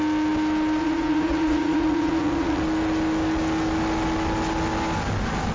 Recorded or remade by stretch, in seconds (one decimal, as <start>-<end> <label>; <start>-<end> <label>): 0.0-0.8 recorded; 0.8-2.6 remade; 2.6-5.5 recorded